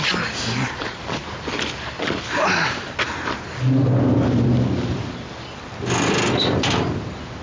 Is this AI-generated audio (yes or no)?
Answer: no